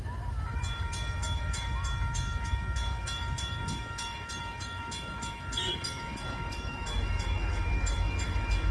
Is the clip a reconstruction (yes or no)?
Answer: yes